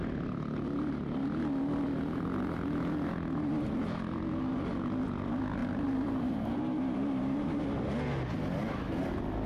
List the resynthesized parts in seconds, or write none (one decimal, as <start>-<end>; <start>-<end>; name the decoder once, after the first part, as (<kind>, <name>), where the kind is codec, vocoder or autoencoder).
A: 5.6-7.6 (vocoder, BigVGAN v2)